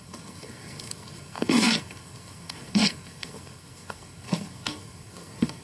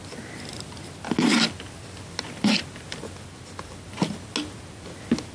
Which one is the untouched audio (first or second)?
second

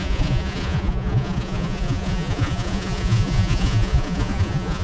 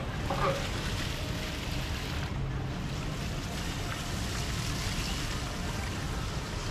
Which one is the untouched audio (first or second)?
second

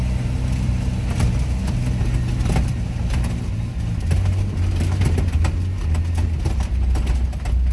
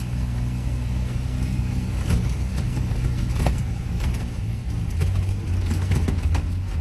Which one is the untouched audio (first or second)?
first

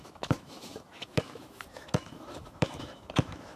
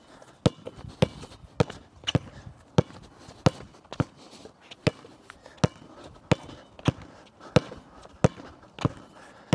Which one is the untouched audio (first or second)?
second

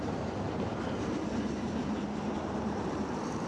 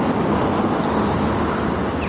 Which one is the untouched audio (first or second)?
second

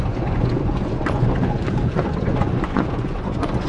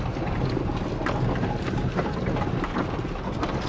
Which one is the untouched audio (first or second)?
second